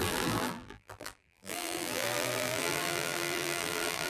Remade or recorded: remade